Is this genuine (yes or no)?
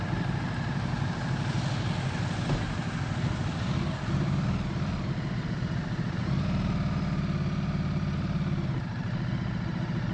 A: yes